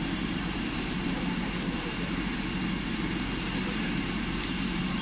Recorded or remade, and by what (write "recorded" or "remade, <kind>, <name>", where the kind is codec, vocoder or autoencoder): remade, vocoder, BigVGAN v2